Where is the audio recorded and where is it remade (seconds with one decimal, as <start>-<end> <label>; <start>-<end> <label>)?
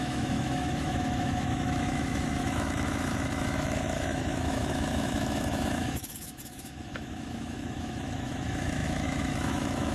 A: 0.0-9.9 remade